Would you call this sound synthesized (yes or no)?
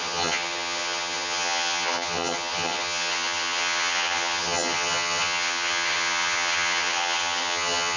yes